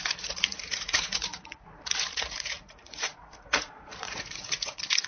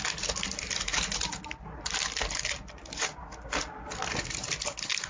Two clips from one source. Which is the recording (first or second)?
second